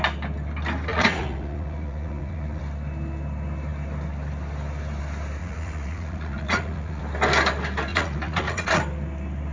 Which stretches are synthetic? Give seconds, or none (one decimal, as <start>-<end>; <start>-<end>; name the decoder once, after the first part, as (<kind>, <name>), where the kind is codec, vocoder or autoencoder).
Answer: 0.9-2.6 (vocoder, Vocos); 5.4-7.0; 7.9-8.8